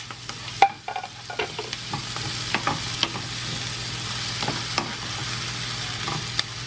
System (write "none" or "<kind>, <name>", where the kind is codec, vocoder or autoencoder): none